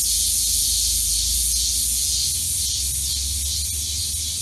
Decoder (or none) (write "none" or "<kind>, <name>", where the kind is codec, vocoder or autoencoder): none